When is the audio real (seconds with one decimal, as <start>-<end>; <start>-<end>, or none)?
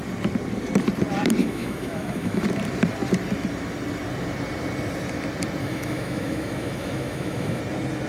0.0-1.4; 2.4-5.6; 7.6-8.1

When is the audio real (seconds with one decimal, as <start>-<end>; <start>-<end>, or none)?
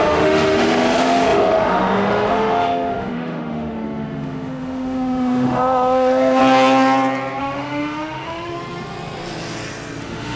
6.4-7.4; 8.5-10.0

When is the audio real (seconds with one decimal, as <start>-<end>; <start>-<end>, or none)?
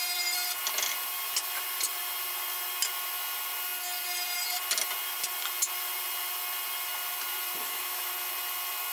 0.0-7.6; 8.1-8.9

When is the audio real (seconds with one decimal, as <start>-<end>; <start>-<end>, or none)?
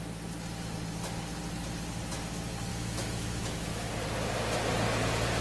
0.0-2.7; 3.9-5.4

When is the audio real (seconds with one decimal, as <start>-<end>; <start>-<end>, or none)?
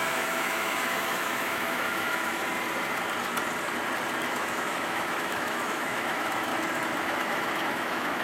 2.4-4.3; 6.5-7.0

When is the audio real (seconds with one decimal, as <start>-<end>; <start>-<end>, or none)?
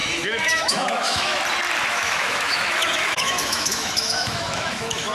1.4-1.9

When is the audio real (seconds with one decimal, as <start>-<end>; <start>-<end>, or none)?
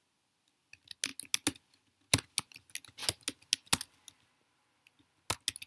0.0-5.7